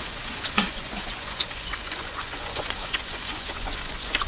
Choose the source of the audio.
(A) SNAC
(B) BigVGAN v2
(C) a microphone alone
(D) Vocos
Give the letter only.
D